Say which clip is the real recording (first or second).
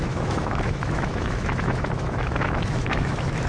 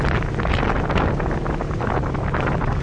second